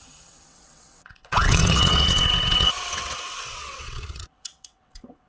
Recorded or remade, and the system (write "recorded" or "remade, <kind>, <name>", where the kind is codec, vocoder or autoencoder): remade, vocoder, WaveNeXt